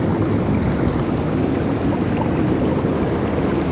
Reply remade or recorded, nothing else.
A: recorded